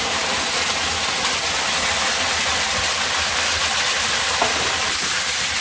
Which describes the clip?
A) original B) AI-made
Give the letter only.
A